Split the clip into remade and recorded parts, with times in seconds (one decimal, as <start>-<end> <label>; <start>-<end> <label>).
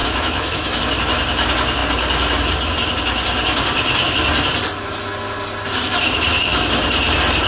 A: 0.0-0.8 remade; 0.8-7.5 recorded